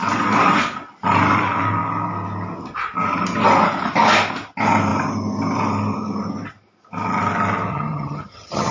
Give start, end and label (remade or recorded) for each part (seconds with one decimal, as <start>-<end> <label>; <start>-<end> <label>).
0.0-7.7 recorded; 7.7-8.7 remade